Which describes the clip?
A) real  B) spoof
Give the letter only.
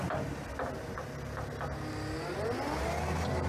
A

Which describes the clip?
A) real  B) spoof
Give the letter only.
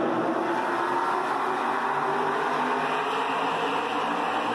A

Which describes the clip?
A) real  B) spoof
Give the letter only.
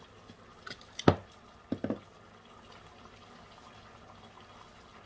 A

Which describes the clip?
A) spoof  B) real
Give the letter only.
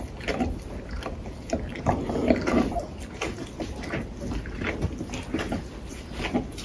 B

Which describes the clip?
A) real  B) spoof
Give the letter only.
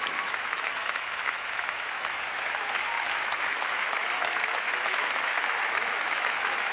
B